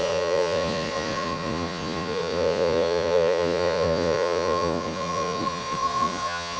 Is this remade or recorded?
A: remade